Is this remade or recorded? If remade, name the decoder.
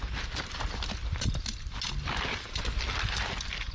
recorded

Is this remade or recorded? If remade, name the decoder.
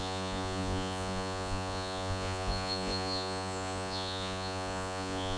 remade, vocoder, Vocos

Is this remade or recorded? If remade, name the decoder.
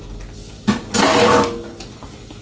recorded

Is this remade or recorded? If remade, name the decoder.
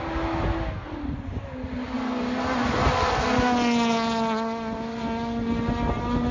recorded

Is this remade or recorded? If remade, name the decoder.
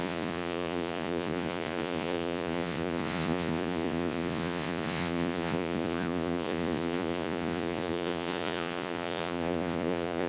remade, vocoder, Vocos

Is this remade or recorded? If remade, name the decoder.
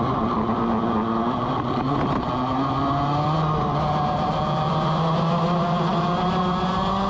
recorded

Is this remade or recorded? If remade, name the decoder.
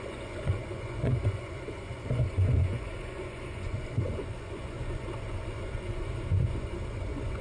remade, vocoder, Vocos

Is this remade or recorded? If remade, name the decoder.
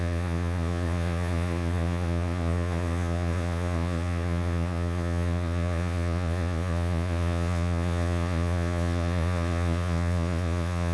remade, vocoder, Vocos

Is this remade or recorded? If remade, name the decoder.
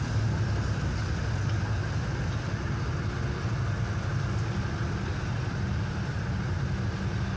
recorded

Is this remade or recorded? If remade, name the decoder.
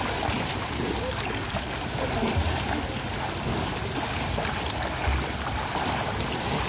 recorded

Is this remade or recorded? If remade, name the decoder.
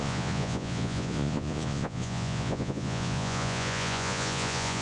remade, vocoder, Vocos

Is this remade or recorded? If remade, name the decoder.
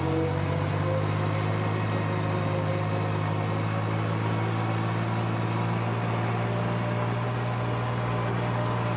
recorded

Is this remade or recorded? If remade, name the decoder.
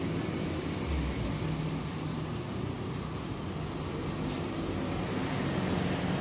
recorded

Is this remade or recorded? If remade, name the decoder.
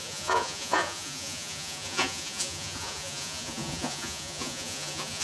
remade, vocoder, Vocos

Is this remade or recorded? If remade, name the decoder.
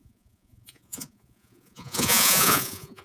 remade, vocoder, Vocos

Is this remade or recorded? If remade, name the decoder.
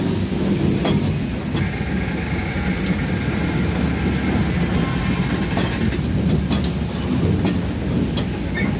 recorded